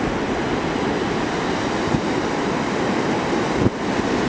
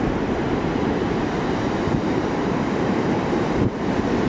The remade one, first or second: second